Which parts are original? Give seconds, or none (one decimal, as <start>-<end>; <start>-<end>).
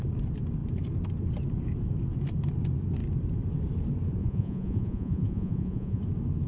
0.0-4.2; 6.0-6.5